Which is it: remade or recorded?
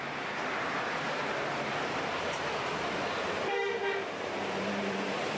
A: remade